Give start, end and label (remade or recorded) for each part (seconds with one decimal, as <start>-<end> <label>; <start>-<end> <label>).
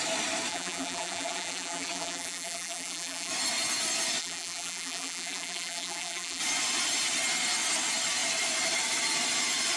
0.0-0.5 recorded; 0.5-3.3 remade; 3.3-4.2 recorded; 4.2-6.4 remade; 6.4-9.8 recorded